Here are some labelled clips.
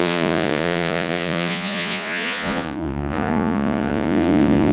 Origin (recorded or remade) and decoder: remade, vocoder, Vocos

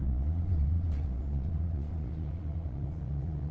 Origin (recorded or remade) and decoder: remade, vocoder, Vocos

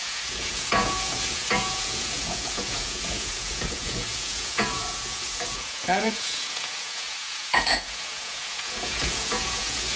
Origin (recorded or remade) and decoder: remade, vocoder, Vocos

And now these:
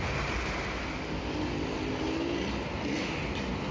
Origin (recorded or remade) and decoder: recorded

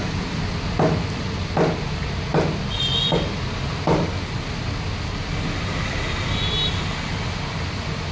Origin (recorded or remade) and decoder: recorded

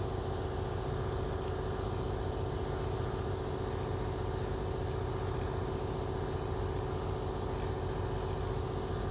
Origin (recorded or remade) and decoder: recorded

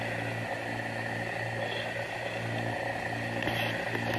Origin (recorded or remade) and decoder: recorded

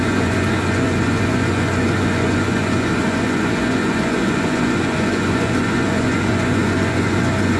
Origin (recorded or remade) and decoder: remade, vocoder, Vocos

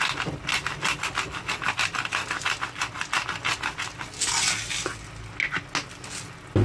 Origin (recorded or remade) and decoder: recorded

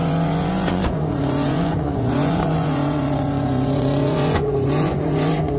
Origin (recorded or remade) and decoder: remade, vocoder, Vocos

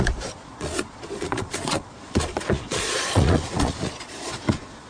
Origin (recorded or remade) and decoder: remade, vocoder, Vocos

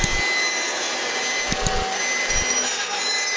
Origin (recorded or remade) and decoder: recorded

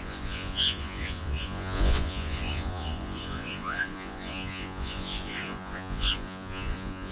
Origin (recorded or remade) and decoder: remade, vocoder, Vocos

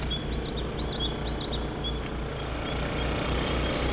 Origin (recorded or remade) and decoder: recorded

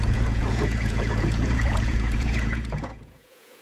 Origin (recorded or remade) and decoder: remade, vocoder, Vocos